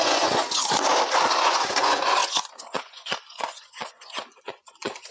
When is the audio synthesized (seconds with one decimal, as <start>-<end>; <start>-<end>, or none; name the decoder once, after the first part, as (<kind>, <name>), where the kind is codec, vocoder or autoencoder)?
0.0-0.6 (vocoder, Vocos); 1.4-5.1